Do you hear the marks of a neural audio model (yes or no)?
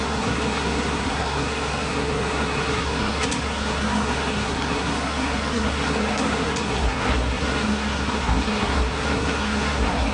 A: yes